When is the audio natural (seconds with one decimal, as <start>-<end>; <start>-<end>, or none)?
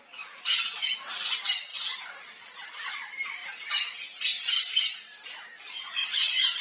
0.0-1.7; 3.0-5.5